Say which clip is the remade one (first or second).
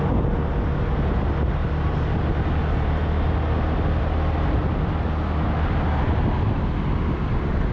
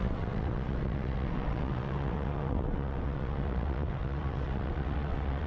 second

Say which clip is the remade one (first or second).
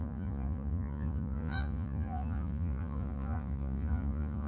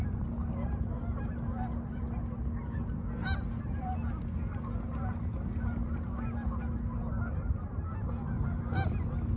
first